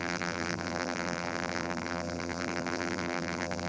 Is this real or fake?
fake